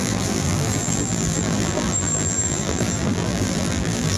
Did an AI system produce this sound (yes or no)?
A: yes